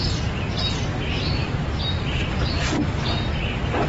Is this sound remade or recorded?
recorded